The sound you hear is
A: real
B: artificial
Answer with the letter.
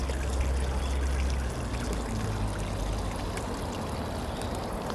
A